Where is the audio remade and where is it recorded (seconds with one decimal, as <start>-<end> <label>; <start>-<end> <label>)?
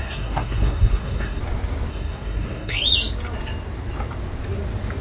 0.0-1.4 remade; 1.4-1.9 recorded; 1.9-2.8 remade; 2.8-5.0 recorded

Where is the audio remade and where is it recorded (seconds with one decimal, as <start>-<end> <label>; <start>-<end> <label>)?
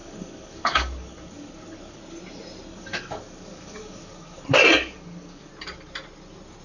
0.0-2.0 remade; 2.0-2.7 recorded; 2.7-5.5 remade; 5.5-6.6 recorded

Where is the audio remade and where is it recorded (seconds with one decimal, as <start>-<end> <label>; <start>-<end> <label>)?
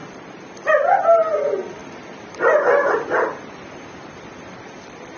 0.0-0.5 remade; 0.5-1.8 recorded; 1.8-4.6 remade; 4.6-5.2 recorded